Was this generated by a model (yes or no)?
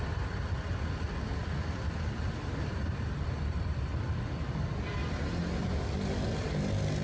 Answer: no